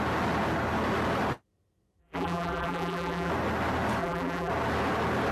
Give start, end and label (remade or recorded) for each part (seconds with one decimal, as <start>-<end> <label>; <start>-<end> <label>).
0.0-2.0 recorded; 2.0-3.3 remade; 3.3-4.0 recorded; 4.0-4.5 remade; 4.5-5.3 recorded